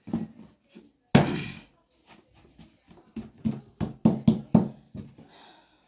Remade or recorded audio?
recorded